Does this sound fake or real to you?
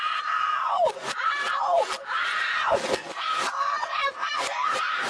real